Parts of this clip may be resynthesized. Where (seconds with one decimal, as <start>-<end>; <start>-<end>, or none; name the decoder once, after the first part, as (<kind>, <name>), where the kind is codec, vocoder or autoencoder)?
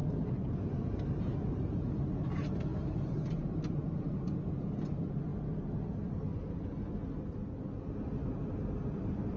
none